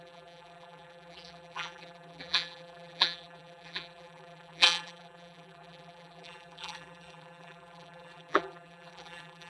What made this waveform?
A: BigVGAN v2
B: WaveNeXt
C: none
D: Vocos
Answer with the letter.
A